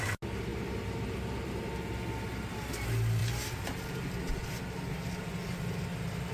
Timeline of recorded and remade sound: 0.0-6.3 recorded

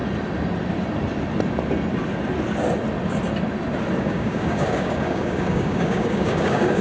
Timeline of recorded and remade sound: 0.0-4.0 recorded; 4.0-6.8 remade